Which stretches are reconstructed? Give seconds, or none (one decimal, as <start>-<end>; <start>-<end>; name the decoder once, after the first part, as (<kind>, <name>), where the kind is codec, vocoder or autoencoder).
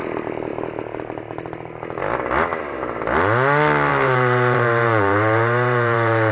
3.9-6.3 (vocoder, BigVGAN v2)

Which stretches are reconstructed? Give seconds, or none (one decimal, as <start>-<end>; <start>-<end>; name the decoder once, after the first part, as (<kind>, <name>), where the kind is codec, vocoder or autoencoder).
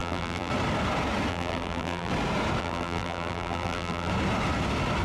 0.0-0.5 (vocoder, BigVGAN v2); 1.3-2.1; 2.6-4.1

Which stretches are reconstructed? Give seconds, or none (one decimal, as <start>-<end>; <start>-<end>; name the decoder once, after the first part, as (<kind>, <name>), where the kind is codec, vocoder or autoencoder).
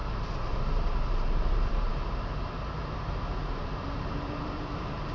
0.0-5.1 (vocoder, BigVGAN v2)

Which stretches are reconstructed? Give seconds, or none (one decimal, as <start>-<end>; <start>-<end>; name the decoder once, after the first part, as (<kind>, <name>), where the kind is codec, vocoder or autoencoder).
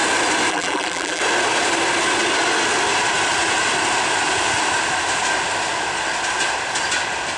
0.5-1.2 (vocoder, BigVGAN v2)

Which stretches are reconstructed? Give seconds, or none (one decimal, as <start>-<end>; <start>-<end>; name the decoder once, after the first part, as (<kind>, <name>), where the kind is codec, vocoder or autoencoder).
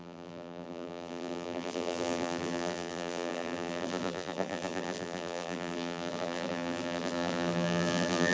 0.0-8.3 (vocoder, BigVGAN v2)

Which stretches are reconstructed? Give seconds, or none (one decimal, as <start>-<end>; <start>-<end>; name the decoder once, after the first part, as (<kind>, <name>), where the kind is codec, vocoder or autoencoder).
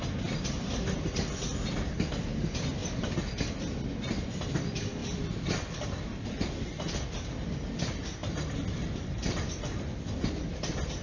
5.0-5.5 (vocoder, BigVGAN v2); 8.2-9.5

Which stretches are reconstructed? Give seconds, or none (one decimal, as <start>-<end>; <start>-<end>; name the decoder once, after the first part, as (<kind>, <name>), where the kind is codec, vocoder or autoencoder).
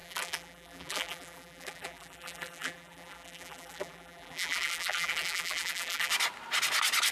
0.0-6.1 (vocoder, BigVGAN v2)